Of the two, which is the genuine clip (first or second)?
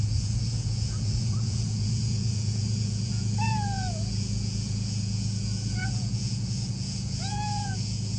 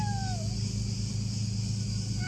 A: second